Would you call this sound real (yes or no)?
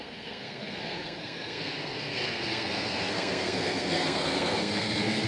no